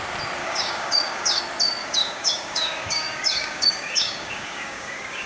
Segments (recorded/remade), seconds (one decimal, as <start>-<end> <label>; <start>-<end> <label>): 0.0-0.4 recorded; 0.4-1.4 remade; 1.4-1.8 recorded; 1.8-5.3 remade